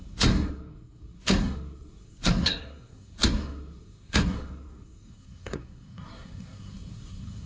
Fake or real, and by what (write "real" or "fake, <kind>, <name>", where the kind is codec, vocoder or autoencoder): fake, codec, SNAC